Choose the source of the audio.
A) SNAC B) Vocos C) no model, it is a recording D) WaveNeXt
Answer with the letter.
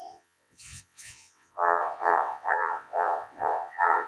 D